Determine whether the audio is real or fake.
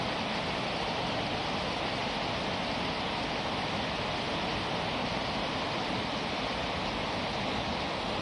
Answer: real